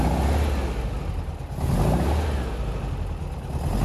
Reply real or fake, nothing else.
real